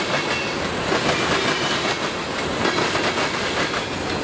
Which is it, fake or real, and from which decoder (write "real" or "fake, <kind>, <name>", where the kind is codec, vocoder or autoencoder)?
real